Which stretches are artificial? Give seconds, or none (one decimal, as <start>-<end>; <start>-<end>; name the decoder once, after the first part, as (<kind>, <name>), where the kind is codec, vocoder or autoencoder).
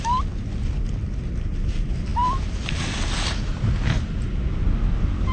none